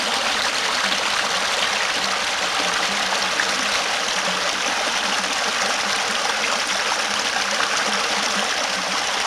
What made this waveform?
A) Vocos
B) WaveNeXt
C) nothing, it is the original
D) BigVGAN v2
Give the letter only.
C